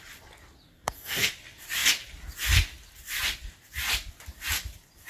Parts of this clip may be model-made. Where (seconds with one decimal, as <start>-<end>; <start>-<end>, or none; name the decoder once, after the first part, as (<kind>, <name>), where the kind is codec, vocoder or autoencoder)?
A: 0.7-1.3 (codec, SNAC)